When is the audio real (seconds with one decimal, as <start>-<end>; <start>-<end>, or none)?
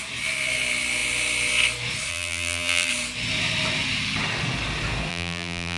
0.0-2.1; 2.9-5.1